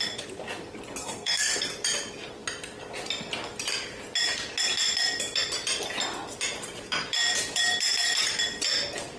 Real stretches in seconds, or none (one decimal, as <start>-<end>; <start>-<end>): 0.0-1.0; 1.6-9.2